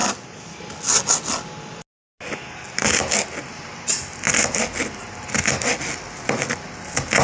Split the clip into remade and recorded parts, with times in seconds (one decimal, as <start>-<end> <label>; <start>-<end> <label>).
0.0-7.2 recorded